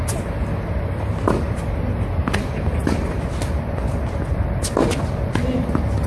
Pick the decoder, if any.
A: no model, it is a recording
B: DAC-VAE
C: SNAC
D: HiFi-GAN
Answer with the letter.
A